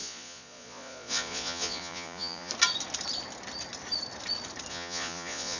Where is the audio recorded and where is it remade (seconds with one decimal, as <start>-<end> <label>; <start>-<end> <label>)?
0.0-2.5 remade; 2.5-4.7 recorded; 4.7-5.6 remade